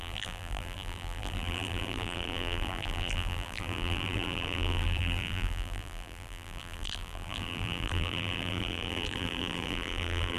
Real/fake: fake